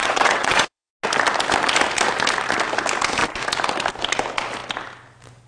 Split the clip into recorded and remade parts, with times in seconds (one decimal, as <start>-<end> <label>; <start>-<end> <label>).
0.0-0.9 remade; 0.9-5.5 recorded